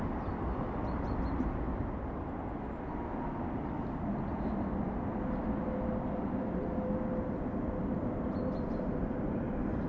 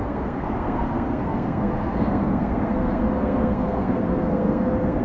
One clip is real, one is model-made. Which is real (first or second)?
first